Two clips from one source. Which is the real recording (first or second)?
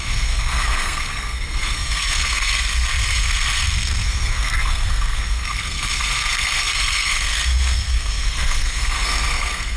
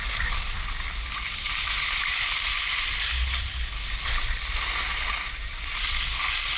second